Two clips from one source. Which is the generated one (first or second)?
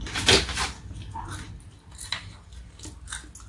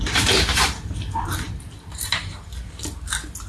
second